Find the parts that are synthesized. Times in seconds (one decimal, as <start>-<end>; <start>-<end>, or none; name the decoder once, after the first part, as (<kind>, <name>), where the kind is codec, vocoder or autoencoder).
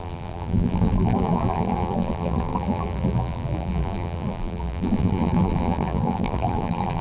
0.0-7.0 (vocoder, BigVGAN v2)